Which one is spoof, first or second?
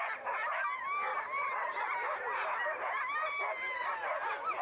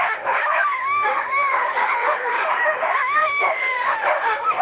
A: second